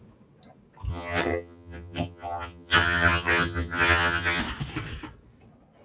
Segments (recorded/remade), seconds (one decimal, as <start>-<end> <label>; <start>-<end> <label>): 0.0-0.9 recorded; 0.9-4.4 remade; 4.4-5.8 recorded